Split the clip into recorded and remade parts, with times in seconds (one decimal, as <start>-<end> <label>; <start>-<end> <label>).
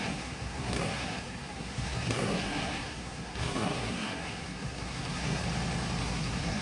0.0-5.4 remade; 5.4-6.0 recorded; 6.0-6.6 remade